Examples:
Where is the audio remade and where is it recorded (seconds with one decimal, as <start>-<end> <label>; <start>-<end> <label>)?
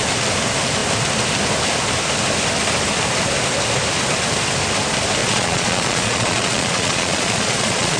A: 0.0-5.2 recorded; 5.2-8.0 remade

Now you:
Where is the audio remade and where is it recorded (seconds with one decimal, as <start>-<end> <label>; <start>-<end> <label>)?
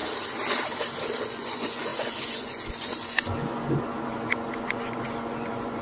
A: 0.0-1.2 recorded; 1.2-5.8 remade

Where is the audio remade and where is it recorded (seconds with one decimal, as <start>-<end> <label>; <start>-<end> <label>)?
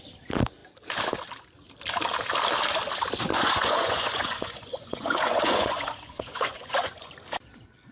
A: 0.0-3.3 recorded; 3.3-7.1 remade; 7.1-7.9 recorded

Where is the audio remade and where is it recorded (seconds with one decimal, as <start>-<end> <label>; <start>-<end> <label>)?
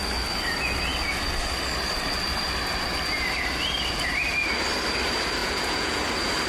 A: 0.0-5.4 recorded; 5.4-6.0 remade; 6.0-6.5 recorded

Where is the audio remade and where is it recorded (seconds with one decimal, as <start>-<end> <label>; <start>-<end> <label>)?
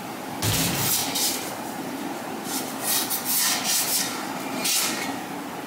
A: 0.0-5.7 recorded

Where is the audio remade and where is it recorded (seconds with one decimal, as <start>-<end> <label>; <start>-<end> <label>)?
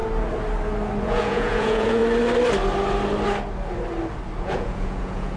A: 0.0-1.0 recorded; 1.0-2.0 remade; 2.0-4.4 recorded; 4.4-5.4 remade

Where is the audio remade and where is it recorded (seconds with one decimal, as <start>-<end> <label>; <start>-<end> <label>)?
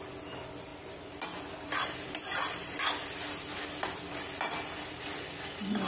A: 0.0-5.9 recorded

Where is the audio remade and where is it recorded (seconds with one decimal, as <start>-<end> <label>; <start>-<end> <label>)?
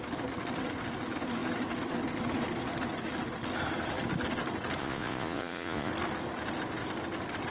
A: 0.0-4.8 recorded; 4.8-5.9 remade; 5.9-7.5 recorded